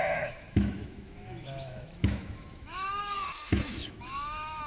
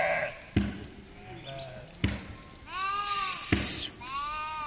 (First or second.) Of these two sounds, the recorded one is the second